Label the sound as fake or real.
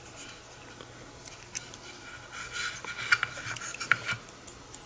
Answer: real